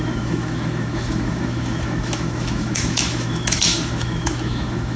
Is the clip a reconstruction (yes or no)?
yes